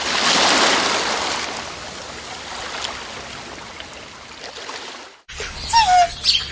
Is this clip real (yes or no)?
yes